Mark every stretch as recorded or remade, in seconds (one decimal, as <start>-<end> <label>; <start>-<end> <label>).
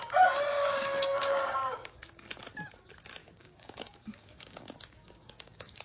0.0-0.5 recorded; 0.5-2.0 remade; 2.0-3.2 recorded; 3.2-5.8 remade